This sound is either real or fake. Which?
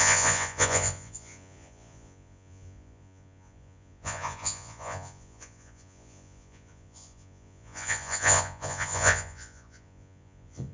fake